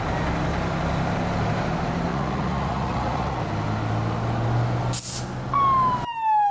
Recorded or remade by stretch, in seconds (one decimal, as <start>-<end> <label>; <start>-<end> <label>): 0.0-2.1 recorded; 2.1-3.4 remade; 3.4-6.5 recorded